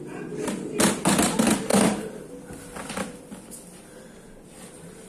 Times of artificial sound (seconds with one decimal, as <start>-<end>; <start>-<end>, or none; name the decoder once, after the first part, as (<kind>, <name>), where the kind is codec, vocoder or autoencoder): none